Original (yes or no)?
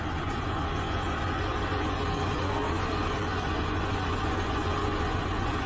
no